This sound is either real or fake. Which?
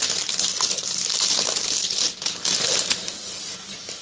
real